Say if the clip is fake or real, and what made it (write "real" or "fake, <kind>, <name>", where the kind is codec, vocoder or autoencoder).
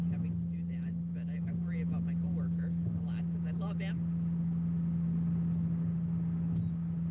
real